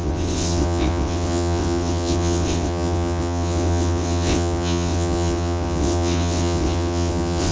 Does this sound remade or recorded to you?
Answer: remade